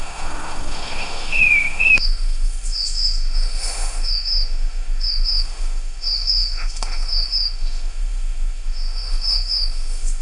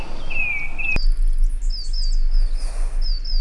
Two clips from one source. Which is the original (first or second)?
second